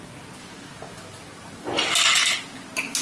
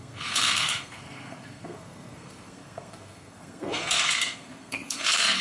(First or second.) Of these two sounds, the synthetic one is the second